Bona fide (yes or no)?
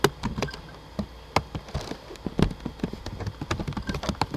yes